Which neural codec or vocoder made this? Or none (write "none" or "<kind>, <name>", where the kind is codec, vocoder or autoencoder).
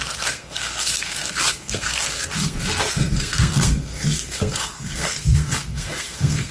codec, SNAC